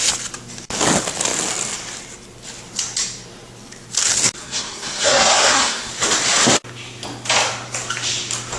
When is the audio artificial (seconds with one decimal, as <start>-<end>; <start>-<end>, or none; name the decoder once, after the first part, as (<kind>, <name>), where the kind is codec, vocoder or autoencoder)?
4.4-5.9 (codec, SNAC)